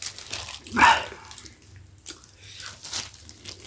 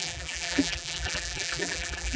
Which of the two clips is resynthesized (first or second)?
second